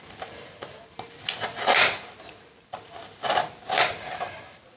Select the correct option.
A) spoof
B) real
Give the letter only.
B